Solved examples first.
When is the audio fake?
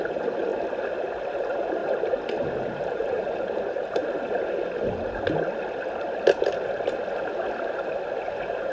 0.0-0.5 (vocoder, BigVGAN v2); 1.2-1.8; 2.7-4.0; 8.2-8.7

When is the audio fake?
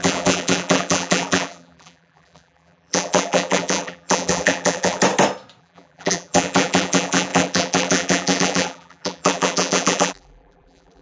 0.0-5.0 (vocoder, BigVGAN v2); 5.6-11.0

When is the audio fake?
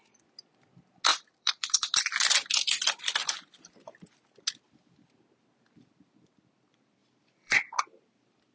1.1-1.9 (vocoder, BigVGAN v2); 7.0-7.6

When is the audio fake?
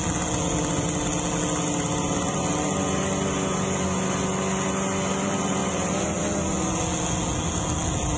none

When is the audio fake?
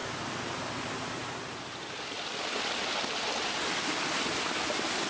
none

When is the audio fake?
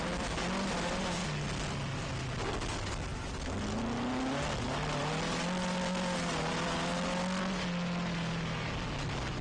none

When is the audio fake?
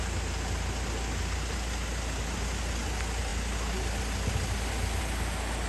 none